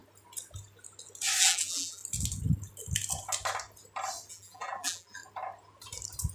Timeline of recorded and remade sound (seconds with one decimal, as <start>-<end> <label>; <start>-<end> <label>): 0.0-1.4 recorded; 1.4-2.0 remade; 2.0-4.3 recorded; 4.3-5.2 remade; 5.2-6.3 recorded